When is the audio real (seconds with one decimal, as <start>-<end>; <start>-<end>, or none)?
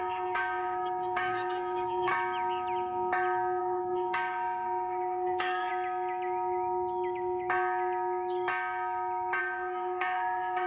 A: 2.1-3.6; 5.7-9.4